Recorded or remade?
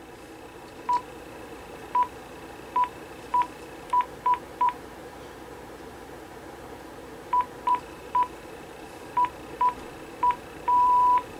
remade